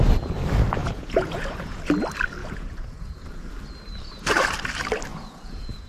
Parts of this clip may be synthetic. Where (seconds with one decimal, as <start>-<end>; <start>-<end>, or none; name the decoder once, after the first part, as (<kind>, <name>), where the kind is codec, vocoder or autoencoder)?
0.8-1.9 (vocoder, Vocos); 2.4-3.5; 5.1-5.9